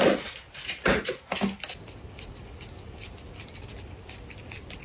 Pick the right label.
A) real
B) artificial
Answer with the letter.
A